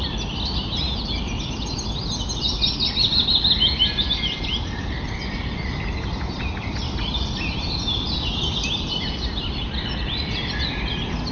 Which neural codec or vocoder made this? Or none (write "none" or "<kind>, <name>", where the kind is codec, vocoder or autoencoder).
none